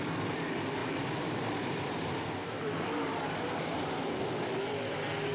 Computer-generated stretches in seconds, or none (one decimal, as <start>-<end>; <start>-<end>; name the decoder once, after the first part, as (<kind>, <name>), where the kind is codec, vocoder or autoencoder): 0.8-4.0 (vocoder, BigVGAN v2)